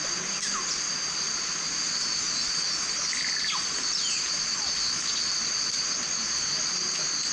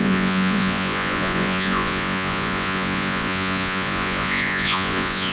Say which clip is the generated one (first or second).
second